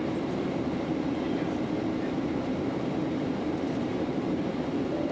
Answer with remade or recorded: remade